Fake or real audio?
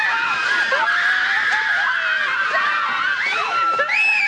real